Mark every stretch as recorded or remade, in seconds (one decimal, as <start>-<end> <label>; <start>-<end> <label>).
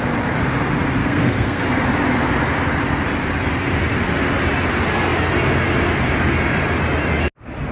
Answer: 0.0-1.0 recorded; 1.0-1.6 remade; 1.6-7.7 recorded